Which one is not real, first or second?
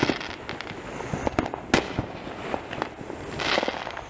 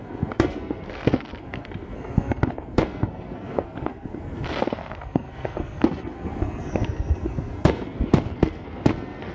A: second